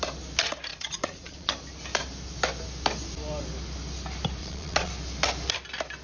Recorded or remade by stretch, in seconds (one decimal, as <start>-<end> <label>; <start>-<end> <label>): 0.0-0.7 recorded; 0.7-1.5 remade; 1.5-4.4 recorded; 4.4-4.9 remade; 4.9-6.0 recorded